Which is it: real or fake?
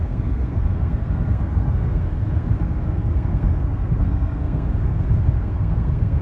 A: fake